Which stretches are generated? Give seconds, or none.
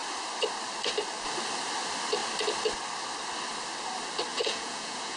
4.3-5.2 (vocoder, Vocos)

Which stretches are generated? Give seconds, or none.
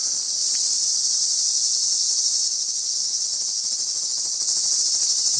1.5-4.7 (vocoder, Vocos)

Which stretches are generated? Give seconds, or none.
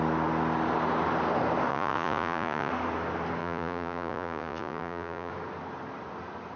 1.7-2.7 (vocoder, Vocos); 3.4-5.3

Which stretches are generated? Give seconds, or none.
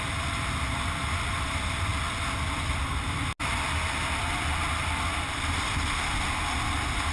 none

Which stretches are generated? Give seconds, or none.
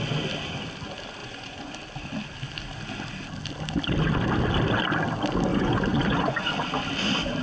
1.2-1.8 (vocoder, Vocos); 5.5-6.5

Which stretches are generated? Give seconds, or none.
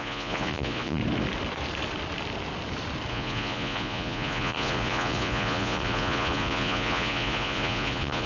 0.0-1.0 (vocoder, Vocos); 3.1-8.3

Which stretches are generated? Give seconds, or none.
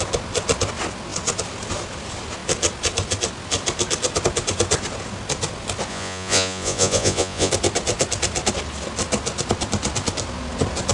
5.9-7.5 (vocoder, Vocos)